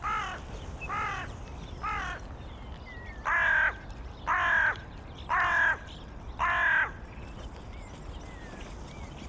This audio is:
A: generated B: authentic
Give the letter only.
B